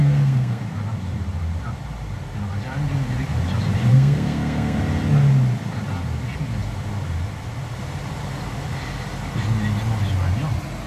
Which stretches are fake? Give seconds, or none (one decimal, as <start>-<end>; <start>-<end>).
0.0-0.6; 3.9-4.8